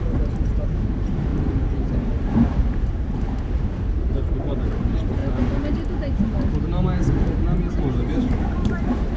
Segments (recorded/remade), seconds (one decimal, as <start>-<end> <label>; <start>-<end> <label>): 0.0-5.2 remade; 5.2-7.8 recorded; 7.8-9.2 remade